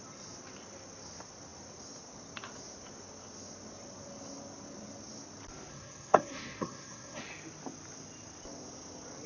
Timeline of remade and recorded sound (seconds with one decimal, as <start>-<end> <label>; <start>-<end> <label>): 0.0-5.7 recorded; 5.7-7.2 remade; 7.2-9.3 recorded